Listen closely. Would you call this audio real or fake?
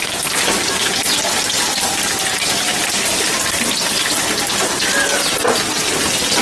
real